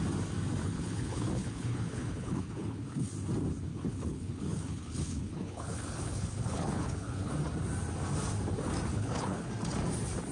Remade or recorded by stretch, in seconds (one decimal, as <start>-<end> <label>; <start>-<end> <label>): 0.0-0.6 recorded; 0.6-3.1 remade; 3.1-3.7 recorded; 3.7-7.3 remade; 7.3-8.9 recorded; 8.9-9.5 remade; 9.5-10.3 recorded